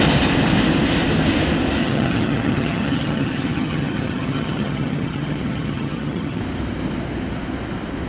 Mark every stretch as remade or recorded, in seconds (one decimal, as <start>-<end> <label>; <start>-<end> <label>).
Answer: 0.0-1.8 recorded; 1.8-6.4 remade; 6.4-8.1 recorded